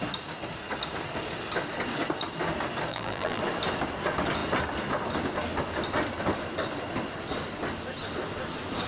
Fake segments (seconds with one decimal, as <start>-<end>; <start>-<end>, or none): 2.9-3.4